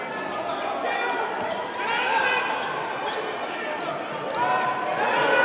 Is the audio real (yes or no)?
yes